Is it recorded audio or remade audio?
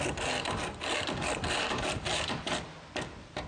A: recorded